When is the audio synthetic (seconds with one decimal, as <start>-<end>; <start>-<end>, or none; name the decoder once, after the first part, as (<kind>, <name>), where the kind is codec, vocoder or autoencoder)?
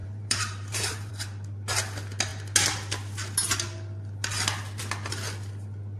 0.0-1.1 (vocoder, BigVGAN v2)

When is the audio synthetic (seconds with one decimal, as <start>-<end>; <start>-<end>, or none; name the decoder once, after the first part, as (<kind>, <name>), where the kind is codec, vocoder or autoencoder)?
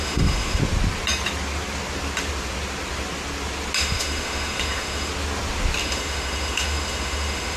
0.0-0.6 (autoencoder, DAC-VAE); 3.8-5.1; 5.8-7.6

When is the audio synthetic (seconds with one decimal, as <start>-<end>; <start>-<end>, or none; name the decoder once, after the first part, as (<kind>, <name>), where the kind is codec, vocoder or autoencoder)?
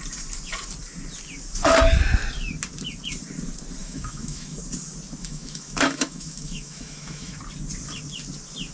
3.8-4.6 (autoencoder, DAC-VAE); 5.2-7.4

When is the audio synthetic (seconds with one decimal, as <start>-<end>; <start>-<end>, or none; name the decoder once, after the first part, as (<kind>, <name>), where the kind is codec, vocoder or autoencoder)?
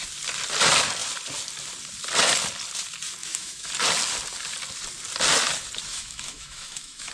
3.2-3.7 (autoencoder, DAC-VAE); 5.9-7.1